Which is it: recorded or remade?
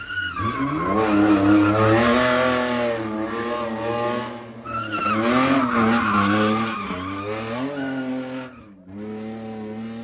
recorded